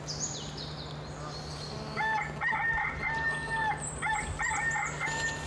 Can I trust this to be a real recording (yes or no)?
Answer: yes